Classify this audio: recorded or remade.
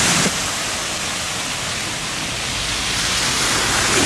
recorded